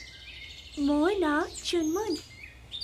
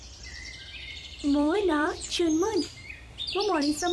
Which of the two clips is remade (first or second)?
second